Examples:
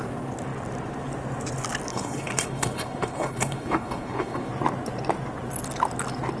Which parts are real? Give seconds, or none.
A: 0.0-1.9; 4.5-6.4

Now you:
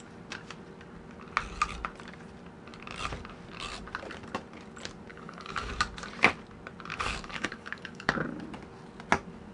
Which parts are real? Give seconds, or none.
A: 0.0-5.1; 5.7-6.9; 8.1-9.5

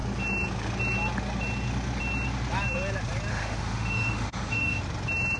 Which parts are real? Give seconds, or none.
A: 0.0-3.3; 4.8-5.4

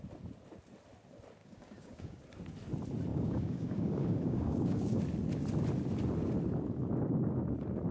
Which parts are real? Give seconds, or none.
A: 0.0-1.4; 2.2-3.1; 5.0-7.9

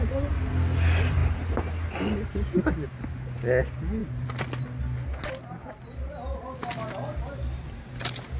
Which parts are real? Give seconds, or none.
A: 0.0-8.4